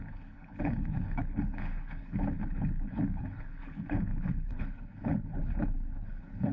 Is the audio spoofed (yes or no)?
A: yes